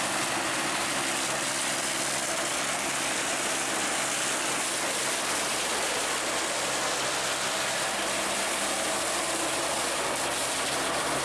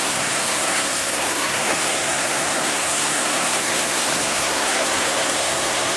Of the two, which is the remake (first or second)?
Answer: second